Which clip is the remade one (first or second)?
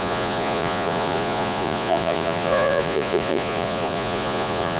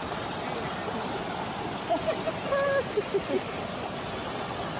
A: first